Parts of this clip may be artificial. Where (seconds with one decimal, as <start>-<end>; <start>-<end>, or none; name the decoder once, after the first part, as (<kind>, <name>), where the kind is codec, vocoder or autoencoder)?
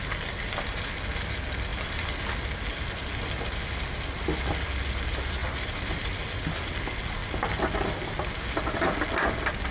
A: 1.7-2.3 (vocoder, BigVGAN v2); 5.4-6.2